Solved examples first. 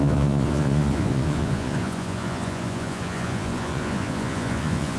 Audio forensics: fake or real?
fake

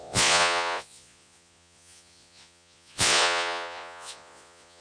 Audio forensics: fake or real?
fake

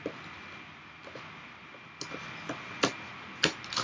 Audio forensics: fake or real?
real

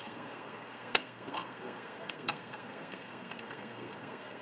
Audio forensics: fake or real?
fake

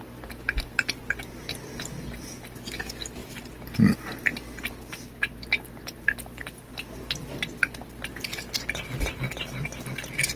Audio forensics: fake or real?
real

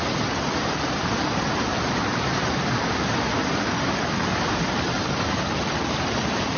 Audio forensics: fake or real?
fake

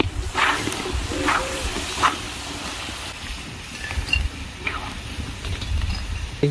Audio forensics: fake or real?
fake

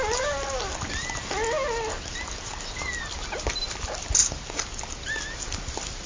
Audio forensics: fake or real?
real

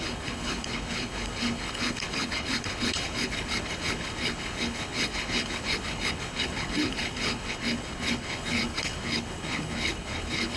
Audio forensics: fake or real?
fake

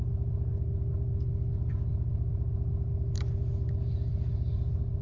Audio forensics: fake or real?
real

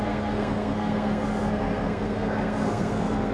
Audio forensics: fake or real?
fake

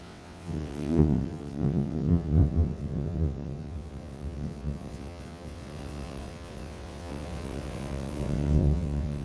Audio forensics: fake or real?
fake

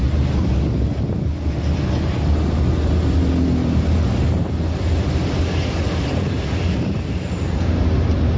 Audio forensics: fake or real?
real